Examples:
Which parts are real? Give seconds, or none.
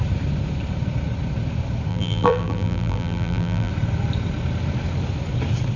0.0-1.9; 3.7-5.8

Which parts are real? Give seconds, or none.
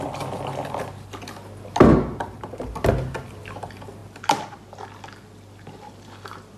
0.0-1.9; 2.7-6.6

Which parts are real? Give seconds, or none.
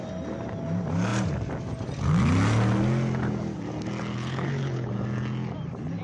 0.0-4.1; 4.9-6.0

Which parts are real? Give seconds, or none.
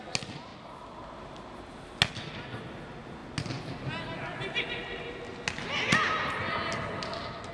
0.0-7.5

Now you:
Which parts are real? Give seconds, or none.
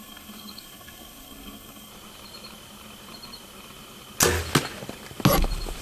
1.9-5.8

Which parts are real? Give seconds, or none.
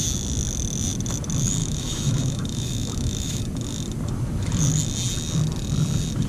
0.0-1.6; 3.4-6.3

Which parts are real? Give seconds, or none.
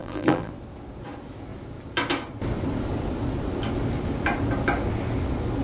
0.5-5.6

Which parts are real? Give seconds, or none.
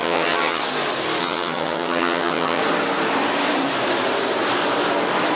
0.6-1.2; 2.6-5.4